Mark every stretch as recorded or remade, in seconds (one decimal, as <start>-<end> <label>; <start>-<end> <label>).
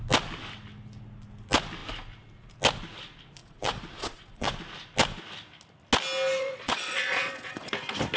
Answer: 0.0-3.4 recorded; 3.4-4.5 remade; 4.5-6.4 recorded; 6.4-7.7 remade; 7.7-8.2 recorded